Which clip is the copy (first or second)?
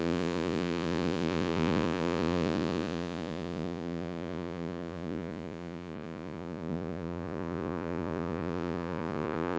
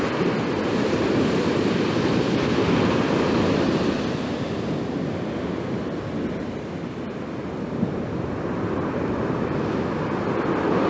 first